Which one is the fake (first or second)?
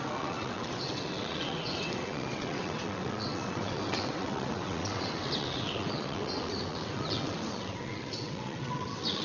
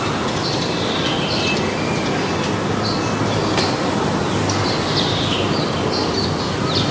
first